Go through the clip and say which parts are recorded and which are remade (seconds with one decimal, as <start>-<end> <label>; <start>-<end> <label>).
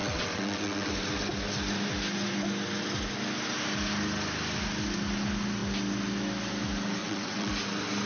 0.0-0.9 remade; 0.9-7.0 recorded; 7.0-7.5 remade; 7.5-8.1 recorded